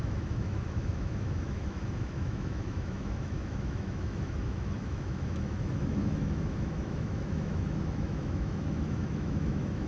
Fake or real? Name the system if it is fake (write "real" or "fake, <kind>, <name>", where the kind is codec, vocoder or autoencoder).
fake, autoencoder, DAC-VAE